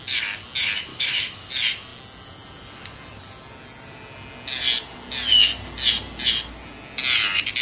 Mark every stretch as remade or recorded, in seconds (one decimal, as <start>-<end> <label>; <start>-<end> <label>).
0.0-0.9 recorded; 0.9-1.5 remade; 1.5-7.6 recorded